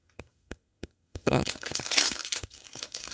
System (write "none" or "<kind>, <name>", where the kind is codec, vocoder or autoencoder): codec, SNAC